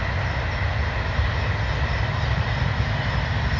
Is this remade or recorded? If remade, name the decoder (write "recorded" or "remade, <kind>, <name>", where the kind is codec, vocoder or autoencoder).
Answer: recorded